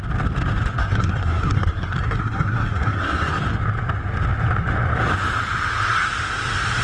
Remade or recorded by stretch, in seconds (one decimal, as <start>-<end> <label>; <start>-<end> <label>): 0.0-0.8 recorded; 0.8-3.4 remade; 3.4-6.8 recorded